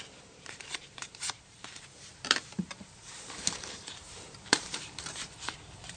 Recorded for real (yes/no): no